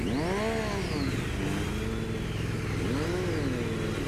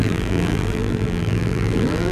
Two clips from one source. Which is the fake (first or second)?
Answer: second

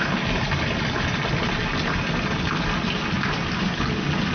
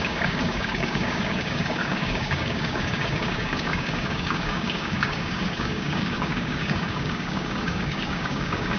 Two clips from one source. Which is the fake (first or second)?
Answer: second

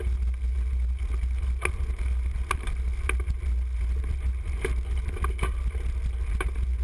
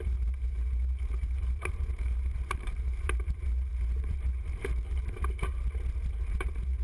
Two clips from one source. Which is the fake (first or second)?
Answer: second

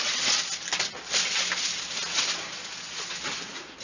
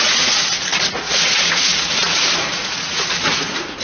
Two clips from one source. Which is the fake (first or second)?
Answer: second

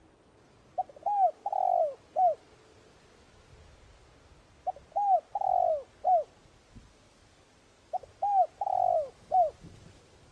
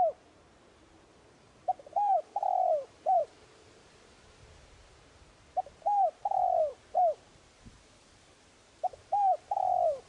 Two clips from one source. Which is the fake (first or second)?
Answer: second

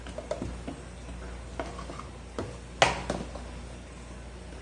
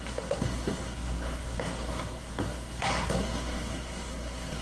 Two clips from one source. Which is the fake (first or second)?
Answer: second